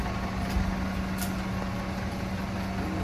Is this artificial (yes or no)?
no